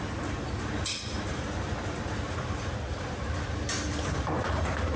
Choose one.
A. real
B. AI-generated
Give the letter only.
A